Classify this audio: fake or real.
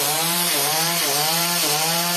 fake